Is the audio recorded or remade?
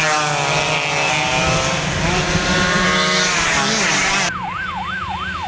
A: recorded